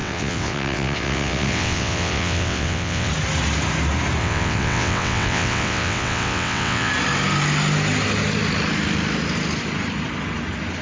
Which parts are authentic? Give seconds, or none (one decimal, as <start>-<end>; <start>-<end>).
3.1-4.2; 6.9-10.8